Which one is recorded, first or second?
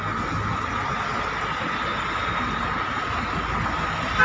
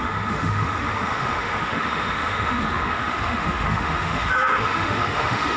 first